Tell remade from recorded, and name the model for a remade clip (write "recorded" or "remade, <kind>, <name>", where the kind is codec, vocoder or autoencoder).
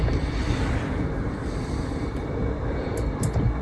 recorded